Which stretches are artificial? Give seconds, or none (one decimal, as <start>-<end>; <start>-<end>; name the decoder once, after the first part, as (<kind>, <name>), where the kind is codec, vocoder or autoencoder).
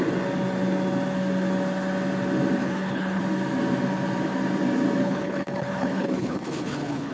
2.6-3.2 (codec, HILCodec); 5.0-7.1